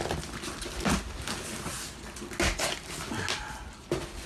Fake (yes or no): no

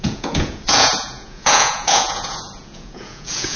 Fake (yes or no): yes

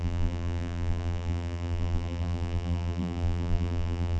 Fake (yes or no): yes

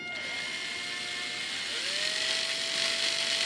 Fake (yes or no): no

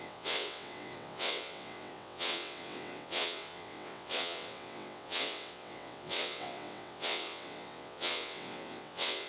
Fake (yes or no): yes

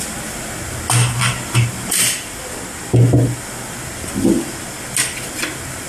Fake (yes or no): no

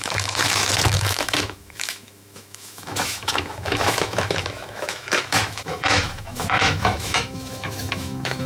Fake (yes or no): yes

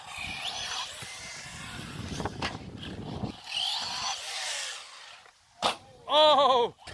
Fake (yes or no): no